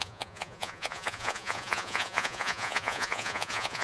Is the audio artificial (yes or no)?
yes